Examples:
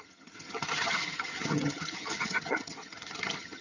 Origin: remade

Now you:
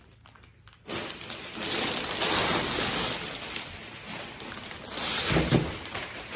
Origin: recorded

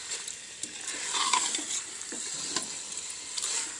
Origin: recorded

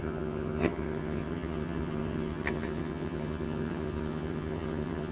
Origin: remade